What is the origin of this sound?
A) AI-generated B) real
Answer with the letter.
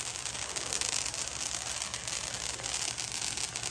B